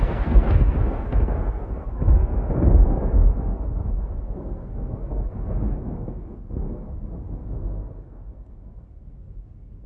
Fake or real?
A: fake